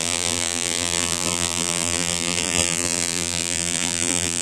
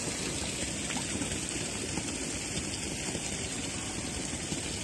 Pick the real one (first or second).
second